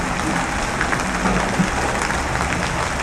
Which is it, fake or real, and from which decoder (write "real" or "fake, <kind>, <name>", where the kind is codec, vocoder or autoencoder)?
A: real